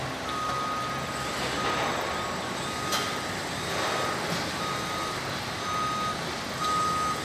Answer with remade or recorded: recorded